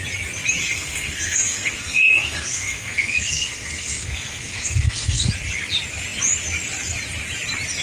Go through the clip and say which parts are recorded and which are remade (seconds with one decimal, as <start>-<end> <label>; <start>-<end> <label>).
0.0-0.6 recorded; 0.6-5.3 remade; 5.3-7.8 recorded